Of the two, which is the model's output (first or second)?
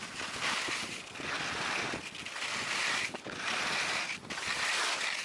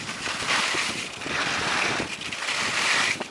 second